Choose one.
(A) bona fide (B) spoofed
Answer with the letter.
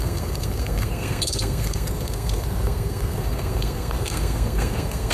B